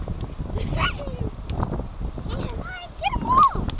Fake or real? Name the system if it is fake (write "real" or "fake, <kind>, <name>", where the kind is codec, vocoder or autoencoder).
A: real